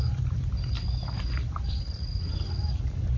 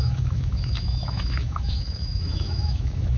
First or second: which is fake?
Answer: second